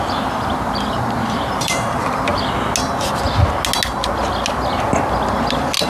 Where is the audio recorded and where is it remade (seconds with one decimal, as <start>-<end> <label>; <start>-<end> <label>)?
0.0-2.3 remade; 2.3-5.9 recorded